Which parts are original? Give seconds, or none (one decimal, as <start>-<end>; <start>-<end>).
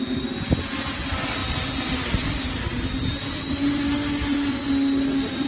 0.0-5.5